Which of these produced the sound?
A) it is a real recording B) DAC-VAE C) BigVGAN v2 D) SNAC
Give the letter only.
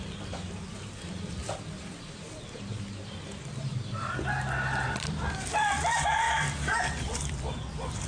C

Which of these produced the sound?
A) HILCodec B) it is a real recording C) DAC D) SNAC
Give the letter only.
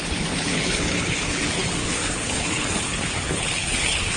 A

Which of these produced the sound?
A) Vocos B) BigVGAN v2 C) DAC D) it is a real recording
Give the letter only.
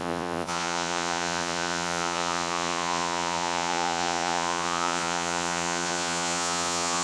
A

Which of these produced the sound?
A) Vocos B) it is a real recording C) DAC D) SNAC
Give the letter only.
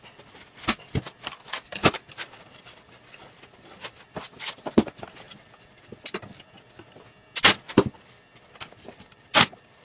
B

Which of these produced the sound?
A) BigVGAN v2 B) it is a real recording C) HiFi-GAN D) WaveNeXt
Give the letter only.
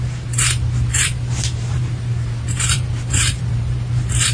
A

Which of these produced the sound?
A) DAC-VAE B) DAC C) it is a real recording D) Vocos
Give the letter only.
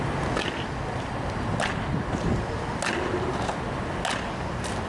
C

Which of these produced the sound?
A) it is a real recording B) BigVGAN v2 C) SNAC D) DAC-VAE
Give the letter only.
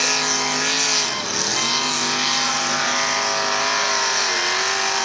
A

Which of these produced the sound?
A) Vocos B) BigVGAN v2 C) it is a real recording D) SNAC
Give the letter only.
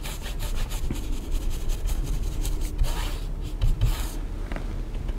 C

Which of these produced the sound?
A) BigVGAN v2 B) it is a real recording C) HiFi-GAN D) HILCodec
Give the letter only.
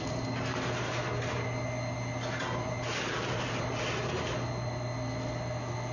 B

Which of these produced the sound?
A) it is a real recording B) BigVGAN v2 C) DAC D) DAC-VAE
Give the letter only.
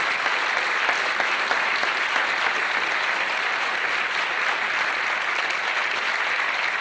A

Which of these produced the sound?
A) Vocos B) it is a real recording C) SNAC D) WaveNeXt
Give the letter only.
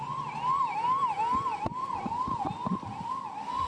B